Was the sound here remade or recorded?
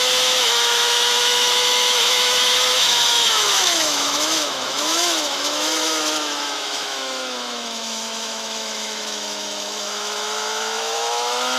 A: remade